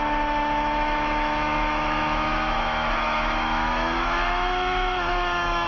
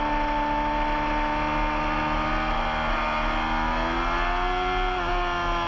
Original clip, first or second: second